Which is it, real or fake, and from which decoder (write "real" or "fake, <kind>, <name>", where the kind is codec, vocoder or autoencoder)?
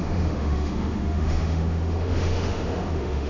fake, autoencoder, DAC-VAE